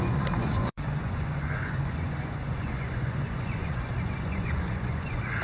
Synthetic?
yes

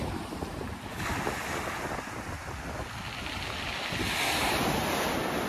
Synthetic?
no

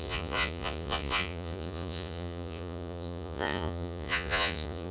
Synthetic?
yes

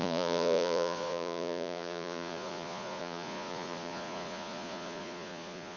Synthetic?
yes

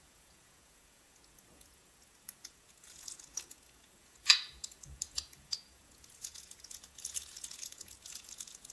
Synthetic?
yes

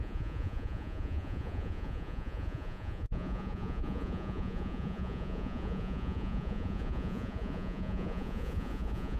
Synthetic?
yes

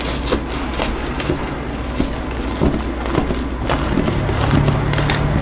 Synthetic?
no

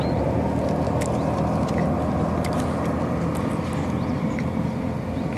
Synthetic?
no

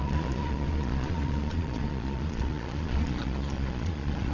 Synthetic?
yes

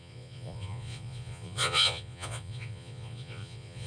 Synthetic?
yes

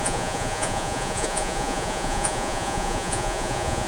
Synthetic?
yes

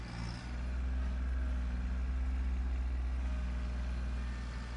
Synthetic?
no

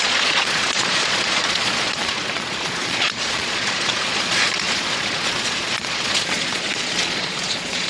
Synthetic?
yes